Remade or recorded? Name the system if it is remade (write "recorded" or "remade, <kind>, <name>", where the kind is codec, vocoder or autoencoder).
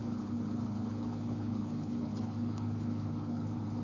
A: remade, codec, HILCodec